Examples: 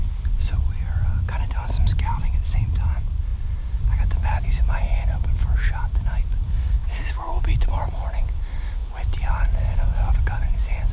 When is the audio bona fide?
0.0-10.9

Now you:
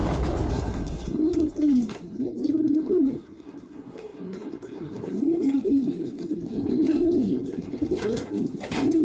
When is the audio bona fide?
0.0-0.5

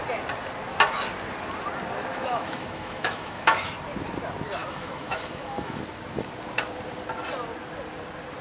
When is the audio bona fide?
0.0-2.1; 3.7-4.6; 5.8-8.4